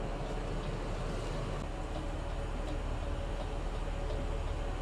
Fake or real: real